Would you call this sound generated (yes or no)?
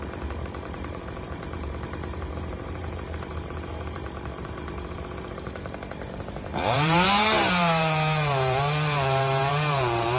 yes